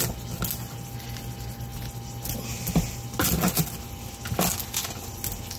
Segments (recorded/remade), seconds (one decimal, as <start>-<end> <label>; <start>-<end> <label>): 0.0-5.6 recorded